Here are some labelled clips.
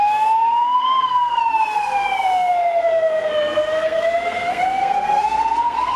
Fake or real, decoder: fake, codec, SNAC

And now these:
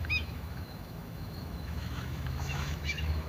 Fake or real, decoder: fake, autoencoder, DAC-VAE